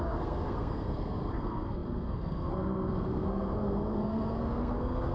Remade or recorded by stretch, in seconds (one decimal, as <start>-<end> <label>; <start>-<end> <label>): 0.0-5.1 remade

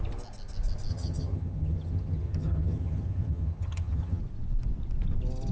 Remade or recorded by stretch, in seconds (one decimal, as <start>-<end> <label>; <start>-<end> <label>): 0.0-0.9 recorded; 0.9-4.2 remade; 4.2-5.5 recorded

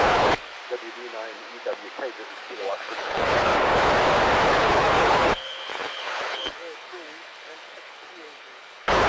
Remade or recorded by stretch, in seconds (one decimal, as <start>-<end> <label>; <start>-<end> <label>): 0.0-0.6 remade; 0.6-2.3 recorded; 2.3-3.5 remade; 3.5-4.5 recorded; 4.5-9.1 remade

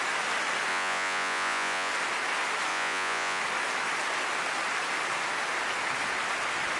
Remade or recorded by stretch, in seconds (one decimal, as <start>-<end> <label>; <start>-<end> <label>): 0.0-0.7 recorded; 0.7-1.9 remade; 1.9-2.7 recorded; 2.7-3.4 remade; 3.4-6.8 recorded

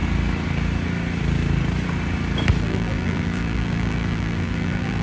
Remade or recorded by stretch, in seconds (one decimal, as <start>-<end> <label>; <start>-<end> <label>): 0.0-2.6 recorded; 2.6-5.0 remade

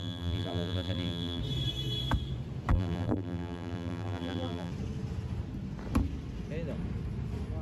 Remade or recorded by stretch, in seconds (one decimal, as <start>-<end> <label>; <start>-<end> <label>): 0.0-1.4 remade; 1.4-2.7 recorded; 2.7-4.7 remade; 4.7-7.6 recorded

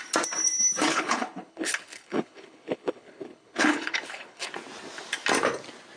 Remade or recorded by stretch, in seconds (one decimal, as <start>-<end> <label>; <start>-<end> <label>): 0.0-0.9 recorded; 0.9-4.5 remade; 4.5-6.0 recorded